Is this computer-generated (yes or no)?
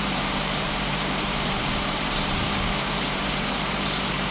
yes